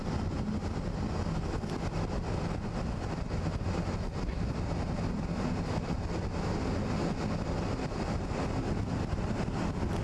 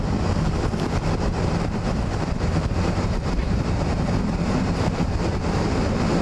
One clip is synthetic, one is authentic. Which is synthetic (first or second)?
second